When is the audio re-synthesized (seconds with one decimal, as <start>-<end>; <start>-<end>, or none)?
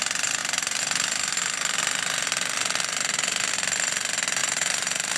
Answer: 4.4-5.2